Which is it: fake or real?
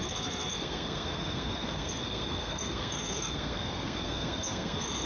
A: fake